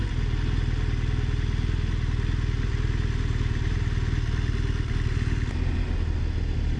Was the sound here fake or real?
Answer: real